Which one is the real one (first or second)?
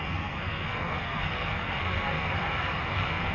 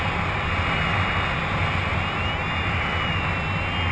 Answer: second